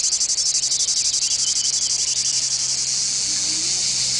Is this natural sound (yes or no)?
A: yes